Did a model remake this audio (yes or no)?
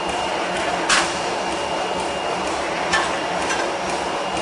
yes